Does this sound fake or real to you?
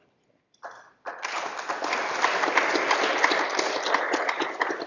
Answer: real